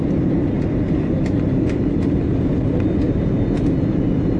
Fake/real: real